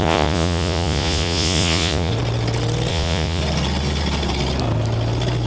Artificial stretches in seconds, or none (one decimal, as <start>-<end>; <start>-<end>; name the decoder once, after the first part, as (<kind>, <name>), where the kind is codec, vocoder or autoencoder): 0.0-2.1 (vocoder, Vocos); 2.9-3.4